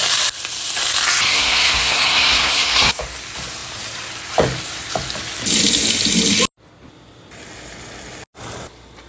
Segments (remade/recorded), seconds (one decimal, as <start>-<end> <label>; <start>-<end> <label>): 0.0-1.3 recorded; 1.3-3.0 remade; 3.0-9.1 recorded